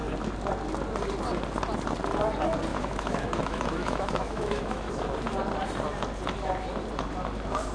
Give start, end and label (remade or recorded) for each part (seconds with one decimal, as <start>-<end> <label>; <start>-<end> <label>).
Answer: 0.0-2.7 recorded; 2.7-4.9 remade; 4.9-7.7 recorded